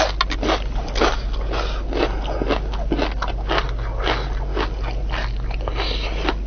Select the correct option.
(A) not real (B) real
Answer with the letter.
B